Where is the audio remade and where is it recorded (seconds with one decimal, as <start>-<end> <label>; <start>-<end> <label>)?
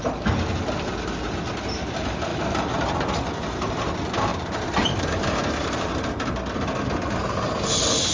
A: 0.0-2.3 recorded; 2.3-2.8 remade; 2.8-4.3 recorded; 4.3-6.3 remade; 6.3-8.1 recorded